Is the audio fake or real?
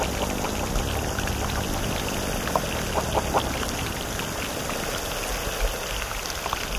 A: real